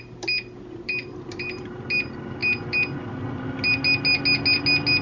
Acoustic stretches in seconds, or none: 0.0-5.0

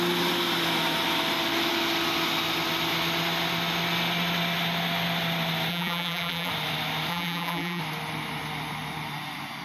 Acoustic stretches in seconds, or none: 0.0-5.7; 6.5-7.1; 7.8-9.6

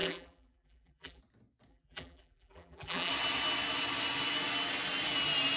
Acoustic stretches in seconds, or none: 1.2-1.7; 3.1-5.6

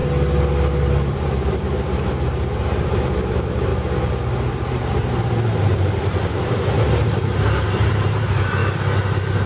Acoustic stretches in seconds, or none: 0.0-1.1; 3.7-4.5; 8.6-9.5

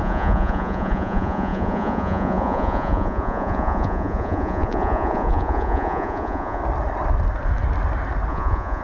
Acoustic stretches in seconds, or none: 6.6-8.3